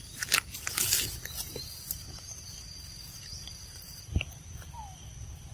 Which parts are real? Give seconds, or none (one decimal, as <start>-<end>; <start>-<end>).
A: 0.0-1.5; 4.8-5.5